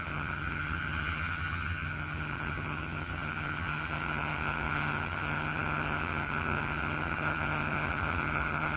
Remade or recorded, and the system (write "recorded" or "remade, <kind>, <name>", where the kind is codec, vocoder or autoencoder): remade, vocoder, HiFi-GAN